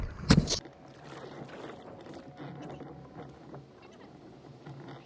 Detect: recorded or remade recorded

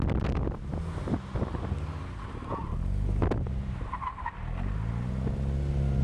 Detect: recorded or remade recorded